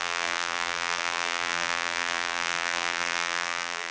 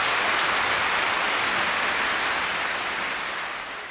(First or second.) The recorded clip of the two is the second